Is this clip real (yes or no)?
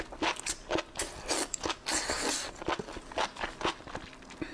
yes